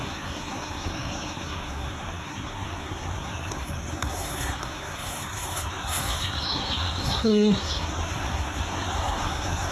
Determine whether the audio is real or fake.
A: fake